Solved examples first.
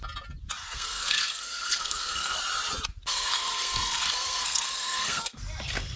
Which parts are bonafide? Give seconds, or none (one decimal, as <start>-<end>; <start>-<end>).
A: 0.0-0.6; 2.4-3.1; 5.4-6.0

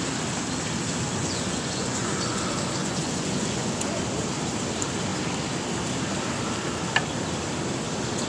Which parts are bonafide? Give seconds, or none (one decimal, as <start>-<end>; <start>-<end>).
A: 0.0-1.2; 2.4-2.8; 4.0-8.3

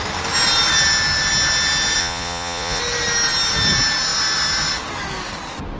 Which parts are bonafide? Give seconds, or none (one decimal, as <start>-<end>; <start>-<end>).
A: 0.0-2.0; 2.8-5.8